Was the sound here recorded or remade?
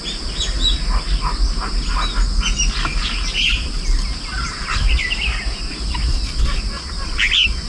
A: recorded